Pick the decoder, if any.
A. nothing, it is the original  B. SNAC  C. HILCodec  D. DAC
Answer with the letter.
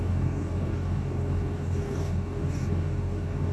D